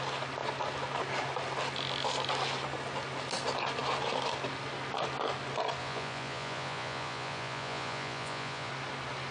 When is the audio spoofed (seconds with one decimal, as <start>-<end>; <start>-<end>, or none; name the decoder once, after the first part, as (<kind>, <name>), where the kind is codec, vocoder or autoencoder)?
5.8-8.7 (vocoder, Vocos)